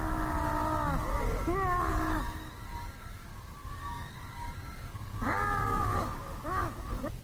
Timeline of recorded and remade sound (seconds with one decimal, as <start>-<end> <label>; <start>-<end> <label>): 0.0-0.5 remade; 0.5-1.9 recorded; 1.9-7.2 remade